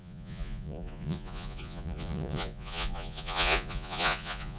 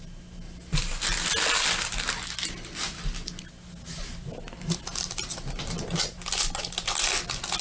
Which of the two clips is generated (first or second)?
first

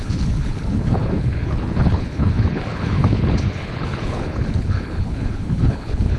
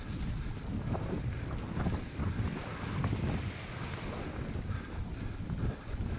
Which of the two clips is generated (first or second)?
first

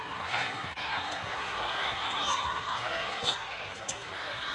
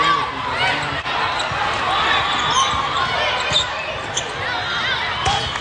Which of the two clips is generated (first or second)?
first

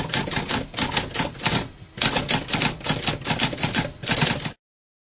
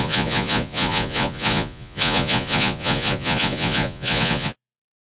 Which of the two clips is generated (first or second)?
second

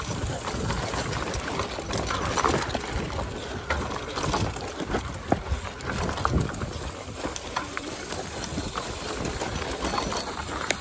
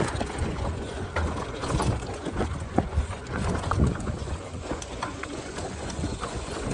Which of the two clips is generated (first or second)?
second